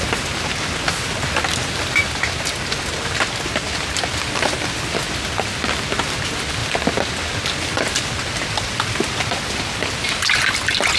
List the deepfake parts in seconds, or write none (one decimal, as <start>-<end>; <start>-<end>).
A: none

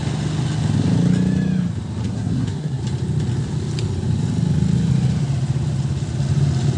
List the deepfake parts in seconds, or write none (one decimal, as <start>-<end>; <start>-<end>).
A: 2.0-2.8

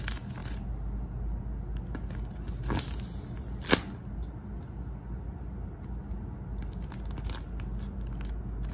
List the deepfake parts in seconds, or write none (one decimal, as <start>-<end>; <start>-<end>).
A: none

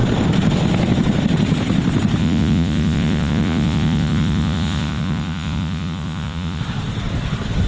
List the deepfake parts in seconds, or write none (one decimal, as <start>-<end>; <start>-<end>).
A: 2.2-6.6

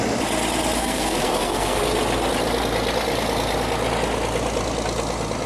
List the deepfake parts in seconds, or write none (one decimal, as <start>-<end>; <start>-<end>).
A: 0.8-1.8

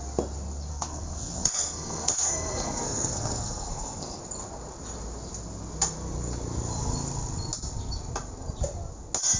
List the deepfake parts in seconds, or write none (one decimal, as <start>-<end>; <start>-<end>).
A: 0.7-4.2